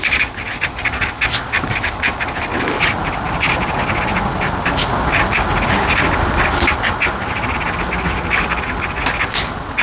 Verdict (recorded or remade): recorded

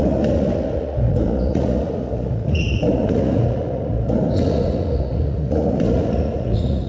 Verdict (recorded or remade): remade